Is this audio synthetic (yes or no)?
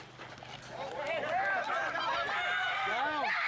no